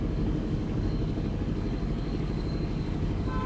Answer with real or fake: fake